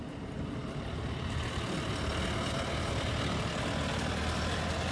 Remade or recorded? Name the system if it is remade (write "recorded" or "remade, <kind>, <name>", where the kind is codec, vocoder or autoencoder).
recorded